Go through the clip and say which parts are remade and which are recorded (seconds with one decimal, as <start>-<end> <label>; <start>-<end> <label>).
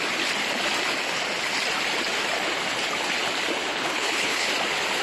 0.0-3.7 recorded; 3.7-4.5 remade; 4.5-5.0 recorded